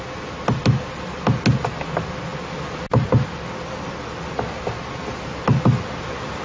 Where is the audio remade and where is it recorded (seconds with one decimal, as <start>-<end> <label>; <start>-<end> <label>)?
0.0-6.4 recorded